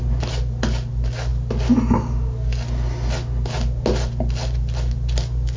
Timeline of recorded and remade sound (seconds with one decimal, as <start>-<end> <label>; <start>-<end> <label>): 0.0-5.6 recorded